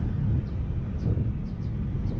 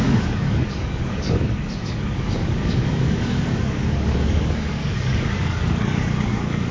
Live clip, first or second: first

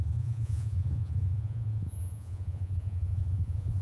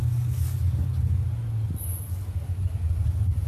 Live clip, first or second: second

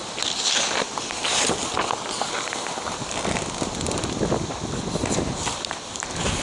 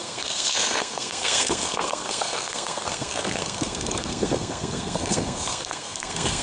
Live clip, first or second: first